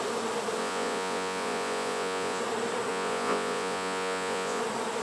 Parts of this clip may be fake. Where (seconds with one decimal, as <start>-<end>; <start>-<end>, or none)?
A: 0.6-2.4; 2.9-4.6